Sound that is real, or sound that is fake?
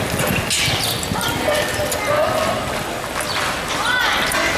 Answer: real